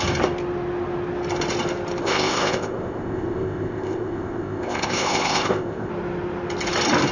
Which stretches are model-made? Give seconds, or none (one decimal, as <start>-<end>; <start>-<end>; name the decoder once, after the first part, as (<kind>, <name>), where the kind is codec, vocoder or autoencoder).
2.0-5.9 (codec, ZipCodec)

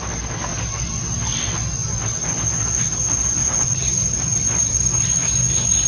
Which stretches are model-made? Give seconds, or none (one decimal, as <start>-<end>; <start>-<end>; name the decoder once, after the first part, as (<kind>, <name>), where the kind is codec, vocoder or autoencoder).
none